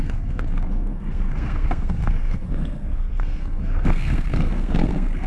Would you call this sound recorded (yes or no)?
no